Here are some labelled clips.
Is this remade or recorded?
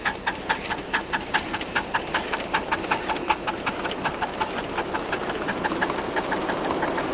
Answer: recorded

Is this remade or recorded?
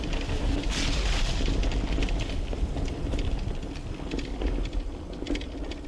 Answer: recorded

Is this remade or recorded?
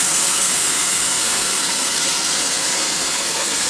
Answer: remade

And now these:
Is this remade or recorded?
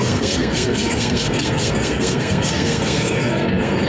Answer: remade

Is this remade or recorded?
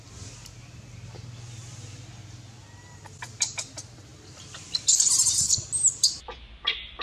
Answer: recorded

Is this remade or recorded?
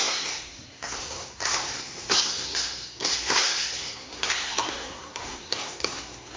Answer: remade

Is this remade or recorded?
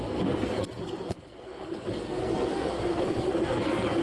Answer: remade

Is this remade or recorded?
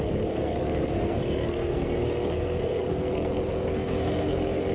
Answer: remade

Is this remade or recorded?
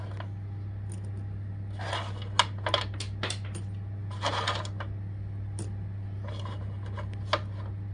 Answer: recorded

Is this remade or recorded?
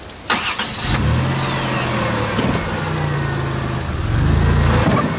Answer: recorded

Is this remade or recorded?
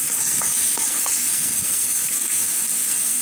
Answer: remade